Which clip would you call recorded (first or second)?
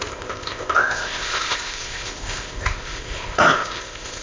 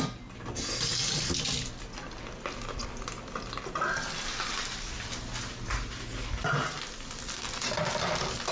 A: second